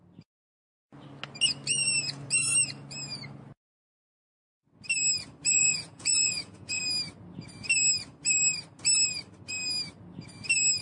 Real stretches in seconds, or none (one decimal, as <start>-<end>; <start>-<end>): 0.0-5.5; 6.8-10.8